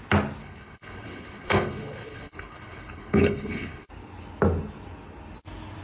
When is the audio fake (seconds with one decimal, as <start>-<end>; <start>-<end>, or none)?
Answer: 0.4-3.9